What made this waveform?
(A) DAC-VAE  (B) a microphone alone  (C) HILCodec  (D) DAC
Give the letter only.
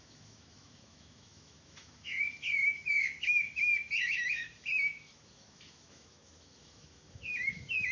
A